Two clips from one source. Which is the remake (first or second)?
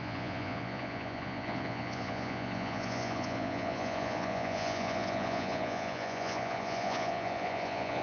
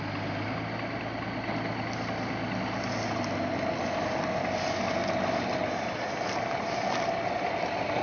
first